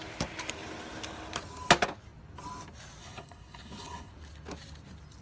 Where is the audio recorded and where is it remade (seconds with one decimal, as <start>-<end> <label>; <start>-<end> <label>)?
0.0-3.0 recorded; 3.0-4.1 remade; 4.1-5.2 recorded